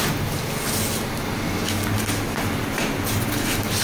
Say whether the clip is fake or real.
real